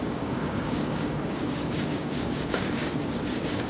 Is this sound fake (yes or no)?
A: yes